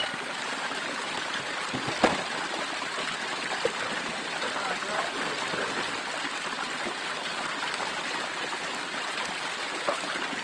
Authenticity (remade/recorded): recorded